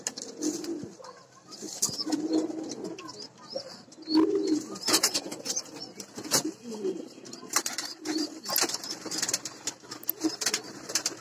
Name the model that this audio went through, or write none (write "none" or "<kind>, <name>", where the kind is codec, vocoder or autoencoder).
none